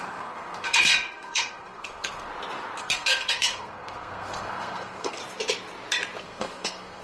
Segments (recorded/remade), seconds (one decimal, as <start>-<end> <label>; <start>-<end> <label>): 0.0-2.3 remade; 2.3-2.8 recorded; 2.8-5.2 remade; 5.2-6.2 recorded; 6.2-7.0 remade